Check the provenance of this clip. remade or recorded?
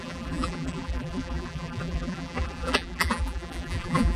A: remade